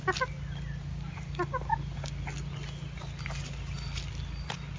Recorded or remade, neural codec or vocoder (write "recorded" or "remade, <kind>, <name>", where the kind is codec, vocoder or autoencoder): recorded